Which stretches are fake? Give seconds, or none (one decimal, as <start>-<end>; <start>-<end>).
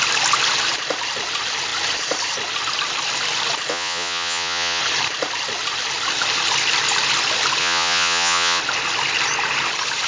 3.7-4.8; 7.6-8.6